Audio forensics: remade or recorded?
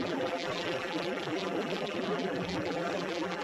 remade